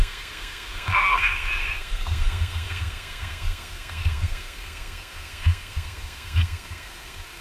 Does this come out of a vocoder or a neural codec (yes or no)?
yes